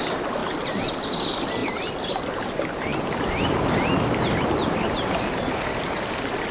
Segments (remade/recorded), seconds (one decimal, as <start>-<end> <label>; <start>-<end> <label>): 0.0-6.5 recorded